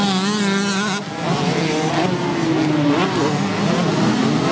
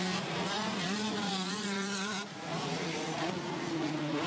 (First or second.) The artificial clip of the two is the second